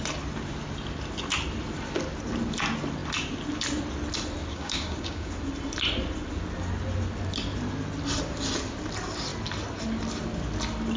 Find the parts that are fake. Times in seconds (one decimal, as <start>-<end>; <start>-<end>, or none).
4.5-5.3